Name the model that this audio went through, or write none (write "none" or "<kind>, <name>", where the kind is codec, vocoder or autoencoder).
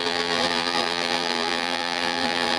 vocoder, BigVGAN v2